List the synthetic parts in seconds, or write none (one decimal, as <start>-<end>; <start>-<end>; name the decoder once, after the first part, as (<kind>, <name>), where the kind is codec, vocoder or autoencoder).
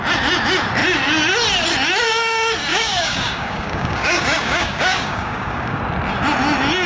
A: 2.7-5.8 (codec, DAC)